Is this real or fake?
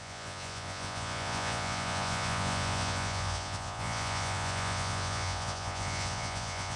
fake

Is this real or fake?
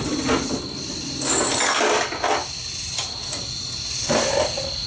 real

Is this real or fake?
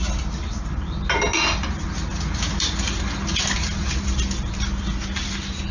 real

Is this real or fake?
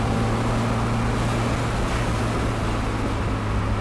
real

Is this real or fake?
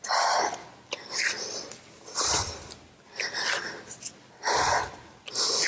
real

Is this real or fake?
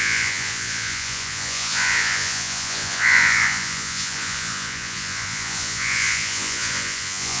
fake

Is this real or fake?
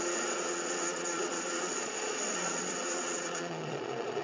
fake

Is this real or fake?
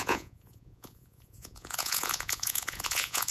fake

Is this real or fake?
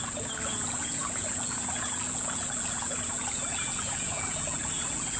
fake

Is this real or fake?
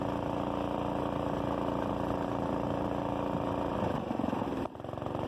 real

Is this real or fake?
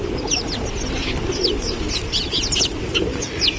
real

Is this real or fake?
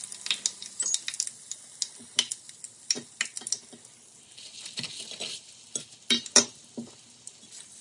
real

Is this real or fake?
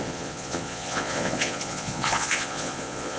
fake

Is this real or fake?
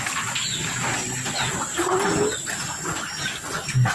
real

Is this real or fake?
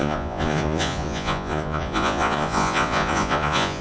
fake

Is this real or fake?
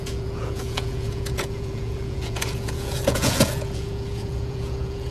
fake